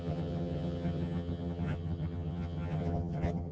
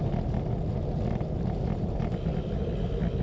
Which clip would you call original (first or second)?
second